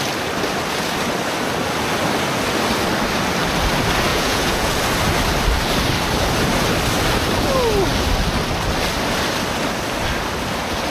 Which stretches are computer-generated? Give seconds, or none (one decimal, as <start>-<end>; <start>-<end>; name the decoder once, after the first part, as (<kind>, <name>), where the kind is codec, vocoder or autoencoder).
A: 4.1-4.7 (vocoder, Vocos)